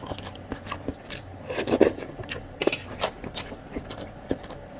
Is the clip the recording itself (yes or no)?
no